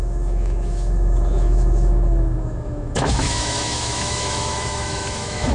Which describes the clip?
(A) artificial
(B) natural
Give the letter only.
A